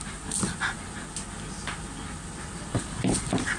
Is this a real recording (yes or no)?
yes